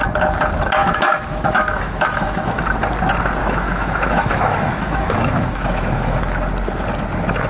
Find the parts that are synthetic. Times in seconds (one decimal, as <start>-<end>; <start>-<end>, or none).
0.8-2.6; 3.4-6.2